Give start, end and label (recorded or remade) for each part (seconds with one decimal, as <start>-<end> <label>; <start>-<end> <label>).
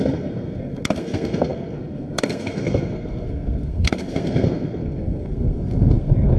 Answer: 0.0-6.4 remade